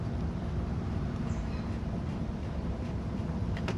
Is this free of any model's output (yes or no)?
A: no